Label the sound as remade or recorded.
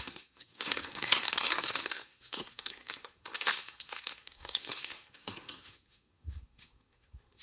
remade